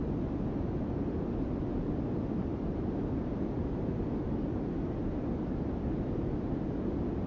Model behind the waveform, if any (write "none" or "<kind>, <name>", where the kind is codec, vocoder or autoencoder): none